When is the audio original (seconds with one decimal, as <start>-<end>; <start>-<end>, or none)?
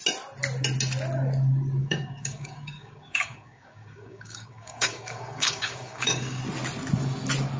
0.0-1.8; 6.4-7.6